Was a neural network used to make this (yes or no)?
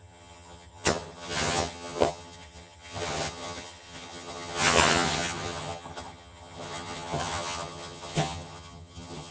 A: yes